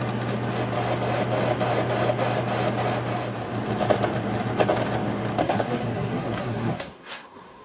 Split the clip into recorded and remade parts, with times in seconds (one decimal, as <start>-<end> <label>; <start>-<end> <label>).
0.0-5.4 recorded; 5.4-7.6 remade